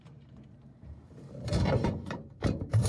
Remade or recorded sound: remade